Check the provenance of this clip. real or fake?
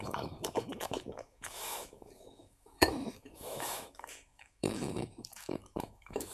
fake